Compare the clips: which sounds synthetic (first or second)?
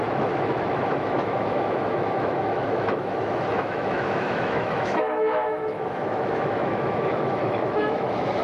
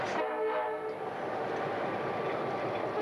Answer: first